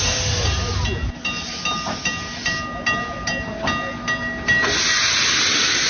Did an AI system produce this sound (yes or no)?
no